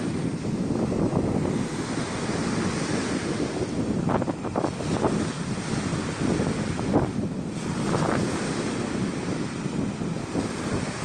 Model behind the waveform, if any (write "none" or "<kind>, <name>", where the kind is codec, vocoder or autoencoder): none